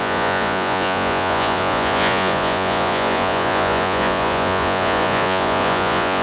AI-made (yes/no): yes